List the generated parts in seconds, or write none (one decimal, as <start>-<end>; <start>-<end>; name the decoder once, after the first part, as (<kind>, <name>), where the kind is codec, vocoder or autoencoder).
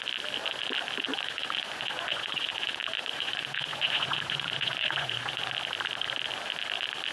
1.1-5.4 (vocoder, Vocos)